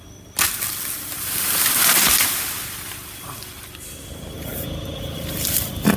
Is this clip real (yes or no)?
yes